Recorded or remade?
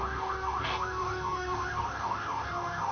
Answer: remade